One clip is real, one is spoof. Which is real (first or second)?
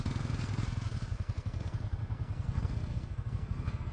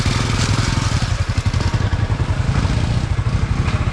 second